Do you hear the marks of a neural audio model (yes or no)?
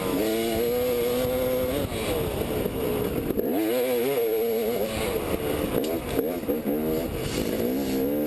no